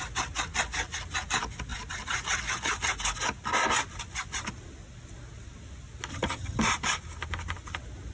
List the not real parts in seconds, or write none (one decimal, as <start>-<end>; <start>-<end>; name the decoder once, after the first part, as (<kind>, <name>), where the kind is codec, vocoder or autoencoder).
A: 6.1-6.6 (vocoder, HiFi-GAN)